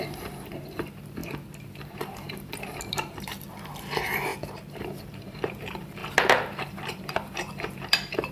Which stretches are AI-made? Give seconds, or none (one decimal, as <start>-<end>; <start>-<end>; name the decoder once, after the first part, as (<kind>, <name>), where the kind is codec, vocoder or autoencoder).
0.0-4.3 (vocoder, BigVGAN v2); 4.8-8.3

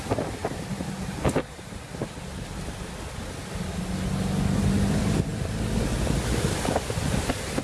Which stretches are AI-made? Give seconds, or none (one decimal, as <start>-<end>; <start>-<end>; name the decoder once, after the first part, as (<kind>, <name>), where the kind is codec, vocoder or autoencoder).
none

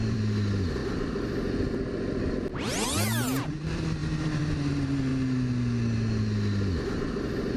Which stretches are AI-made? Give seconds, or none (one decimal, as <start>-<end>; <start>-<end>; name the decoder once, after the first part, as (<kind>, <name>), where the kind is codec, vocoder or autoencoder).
0.0-0.8 (vocoder, BigVGAN v2); 3.4-5.1; 6.8-7.6

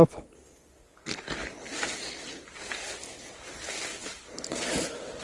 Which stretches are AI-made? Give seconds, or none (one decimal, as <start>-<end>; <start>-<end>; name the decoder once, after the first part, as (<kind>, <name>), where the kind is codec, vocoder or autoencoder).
1.4-2.0 (vocoder, BigVGAN v2); 3.9-5.2

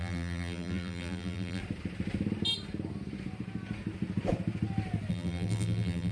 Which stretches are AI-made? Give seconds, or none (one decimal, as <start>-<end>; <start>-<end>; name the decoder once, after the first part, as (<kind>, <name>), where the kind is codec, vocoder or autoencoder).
0.0-1.6 (vocoder, BigVGAN v2); 5.1-6.1

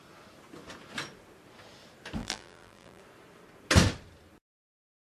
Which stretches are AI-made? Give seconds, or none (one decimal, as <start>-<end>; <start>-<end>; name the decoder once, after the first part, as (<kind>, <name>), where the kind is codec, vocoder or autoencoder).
2.2-3.0 (vocoder, BigVGAN v2)